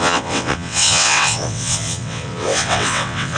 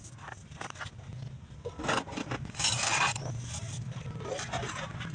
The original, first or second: second